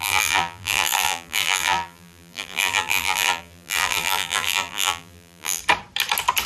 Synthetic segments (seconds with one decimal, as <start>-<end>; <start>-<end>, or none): 0.0-5.6